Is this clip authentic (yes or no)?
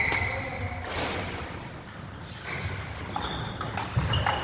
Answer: yes